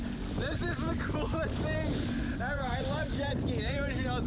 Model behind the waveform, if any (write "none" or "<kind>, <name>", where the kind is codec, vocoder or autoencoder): none